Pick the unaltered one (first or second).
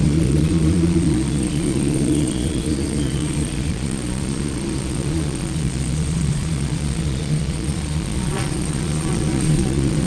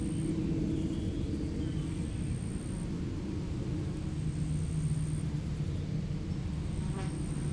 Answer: second